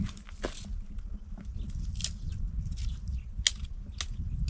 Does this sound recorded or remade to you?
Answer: recorded